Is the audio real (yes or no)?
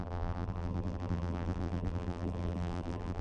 no